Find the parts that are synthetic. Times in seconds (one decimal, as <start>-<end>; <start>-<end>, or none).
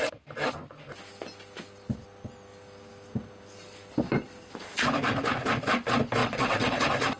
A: 6.2-6.8